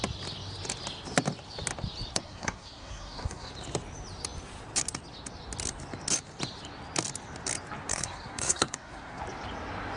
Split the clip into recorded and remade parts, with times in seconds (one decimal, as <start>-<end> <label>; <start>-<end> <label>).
0.0-2.1 recorded; 2.1-3.5 remade; 3.5-7.9 recorded; 7.9-9.2 remade; 9.2-10.0 recorded